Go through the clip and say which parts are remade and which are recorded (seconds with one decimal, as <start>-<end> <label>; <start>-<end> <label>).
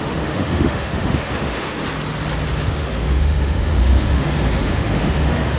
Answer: 0.0-1.8 remade; 1.8-2.6 recorded; 2.6-5.6 remade